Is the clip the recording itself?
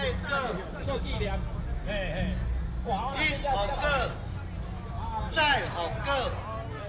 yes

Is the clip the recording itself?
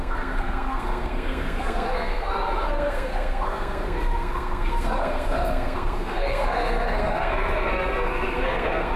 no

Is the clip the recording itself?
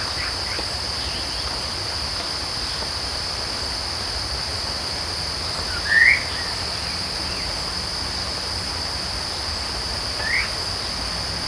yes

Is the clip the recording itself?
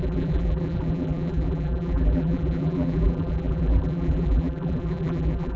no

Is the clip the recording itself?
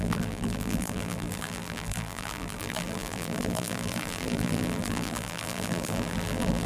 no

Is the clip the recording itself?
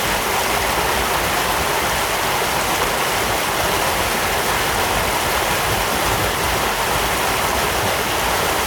yes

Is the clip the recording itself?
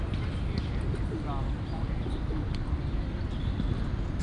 yes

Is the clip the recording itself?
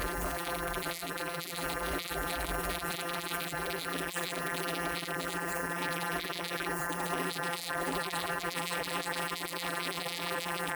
no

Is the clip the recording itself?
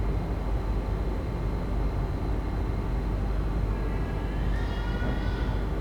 yes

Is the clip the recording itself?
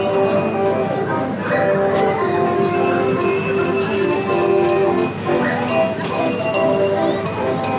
yes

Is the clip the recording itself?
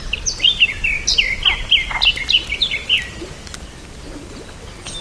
yes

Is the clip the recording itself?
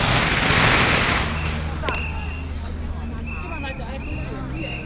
yes